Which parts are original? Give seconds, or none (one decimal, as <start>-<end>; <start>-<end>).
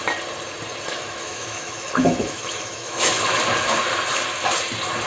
0.0-0.9; 3.1-5.1